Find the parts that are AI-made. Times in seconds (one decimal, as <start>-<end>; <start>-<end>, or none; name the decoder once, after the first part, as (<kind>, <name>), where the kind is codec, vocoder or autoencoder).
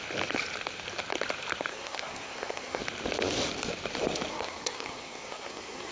1.7-2.8 (codec, SNAC); 4.3-5.9